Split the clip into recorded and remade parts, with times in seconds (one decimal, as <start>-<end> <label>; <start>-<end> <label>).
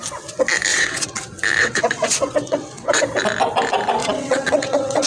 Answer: 0.0-0.7 recorded; 0.7-1.2 remade; 1.2-1.6 recorded; 1.6-3.0 remade; 3.0-4.0 recorded; 4.0-5.1 remade